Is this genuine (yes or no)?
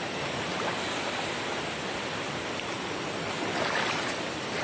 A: yes